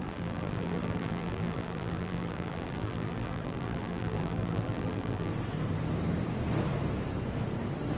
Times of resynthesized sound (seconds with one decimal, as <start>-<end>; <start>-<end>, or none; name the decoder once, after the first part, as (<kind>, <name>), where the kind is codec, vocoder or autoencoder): 0.0-5.3 (vocoder, BigVGAN v2)